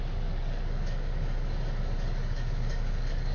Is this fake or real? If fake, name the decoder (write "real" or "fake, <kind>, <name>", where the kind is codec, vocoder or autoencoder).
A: fake, codec, DAC